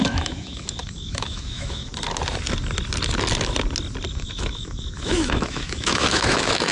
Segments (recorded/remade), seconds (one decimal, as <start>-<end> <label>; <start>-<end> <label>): 0.0-1.9 remade; 1.9-4.1 recorded; 4.1-6.7 remade